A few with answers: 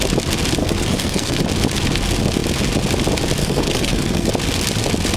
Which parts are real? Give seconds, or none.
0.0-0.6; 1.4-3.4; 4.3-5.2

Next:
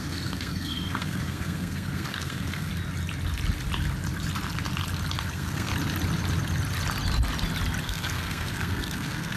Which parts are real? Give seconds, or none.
2.7-5.3; 5.7-7.8

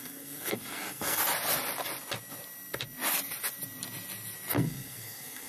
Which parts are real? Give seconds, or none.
1.2-4.5